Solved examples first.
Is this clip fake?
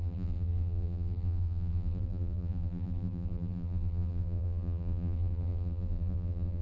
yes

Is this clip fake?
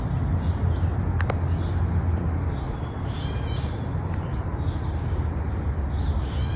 no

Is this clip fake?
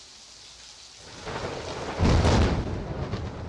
no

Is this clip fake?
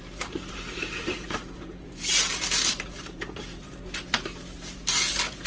yes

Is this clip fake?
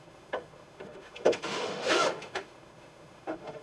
yes